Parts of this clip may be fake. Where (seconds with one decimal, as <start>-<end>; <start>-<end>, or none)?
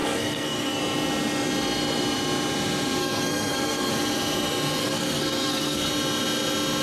0.0-0.8; 3.0-3.9; 4.8-5.9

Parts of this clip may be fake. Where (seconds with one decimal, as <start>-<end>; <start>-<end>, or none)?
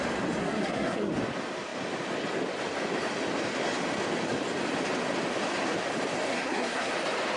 0.4-1.1; 6.3-6.9